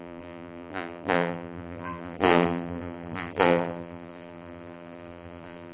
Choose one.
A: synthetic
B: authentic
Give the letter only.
A